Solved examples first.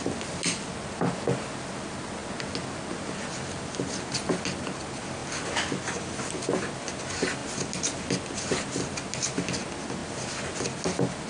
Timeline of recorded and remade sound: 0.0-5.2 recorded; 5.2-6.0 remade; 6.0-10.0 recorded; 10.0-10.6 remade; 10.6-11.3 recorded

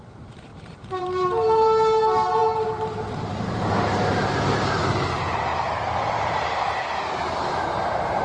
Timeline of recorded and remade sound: 0.0-8.2 remade

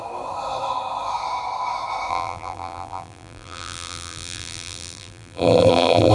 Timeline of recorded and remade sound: 0.0-2.1 recorded; 2.1-6.1 remade

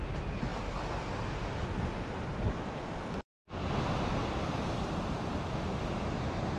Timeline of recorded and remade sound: 0.0-2.3 recorded; 2.3-5.3 remade; 5.3-6.6 recorded

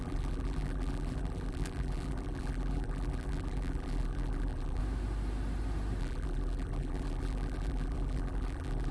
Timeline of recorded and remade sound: 0.0-4.8 remade; 4.8-6.0 recorded; 6.0-8.9 remade